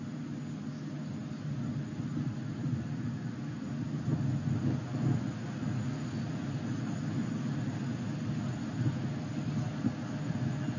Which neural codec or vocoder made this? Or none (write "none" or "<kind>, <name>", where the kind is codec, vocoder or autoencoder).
none